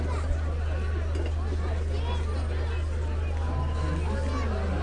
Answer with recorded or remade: recorded